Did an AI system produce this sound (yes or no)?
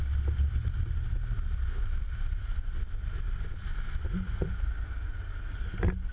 no